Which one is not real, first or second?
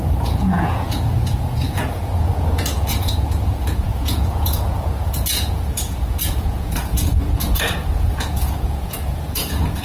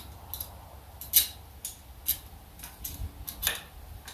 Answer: first